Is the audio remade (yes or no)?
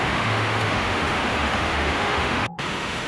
yes